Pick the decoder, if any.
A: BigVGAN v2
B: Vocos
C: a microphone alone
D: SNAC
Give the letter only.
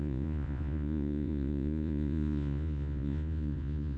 B